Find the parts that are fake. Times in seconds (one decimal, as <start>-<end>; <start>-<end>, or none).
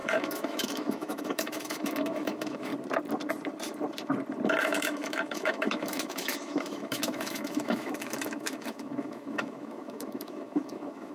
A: 0.0-2.7; 4.6-11.1